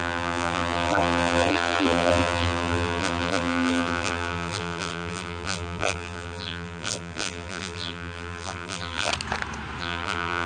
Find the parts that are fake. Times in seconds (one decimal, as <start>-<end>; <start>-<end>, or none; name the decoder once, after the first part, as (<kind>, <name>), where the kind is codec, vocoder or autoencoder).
0.0-9.1 (vocoder, BigVGAN v2); 9.8-10.5